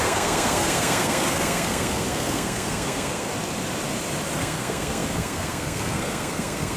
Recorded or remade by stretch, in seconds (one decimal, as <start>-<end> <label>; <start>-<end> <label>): 0.0-3.3 remade; 3.3-4.4 recorded; 4.4-6.8 remade